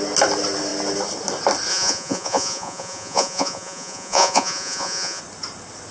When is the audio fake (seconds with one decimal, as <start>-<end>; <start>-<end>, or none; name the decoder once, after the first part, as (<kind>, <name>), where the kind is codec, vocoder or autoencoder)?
1.7-5.2 (vocoder, Vocos)